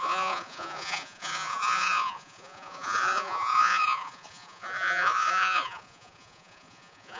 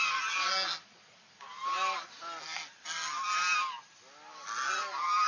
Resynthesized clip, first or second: first